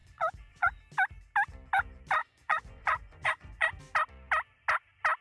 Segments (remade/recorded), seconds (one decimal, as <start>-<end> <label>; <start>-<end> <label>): 0.0-0.8 remade; 0.8-2.2 recorded; 2.2-3.8 remade; 3.8-5.2 recorded